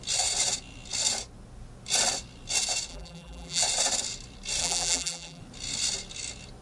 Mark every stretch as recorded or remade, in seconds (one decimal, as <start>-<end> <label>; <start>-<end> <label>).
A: 0.0-2.9 recorded; 2.9-3.6 remade; 3.6-4.6 recorded; 4.6-5.4 remade; 5.4-6.6 recorded